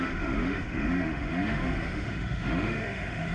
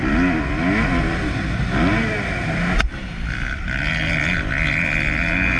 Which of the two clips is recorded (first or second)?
second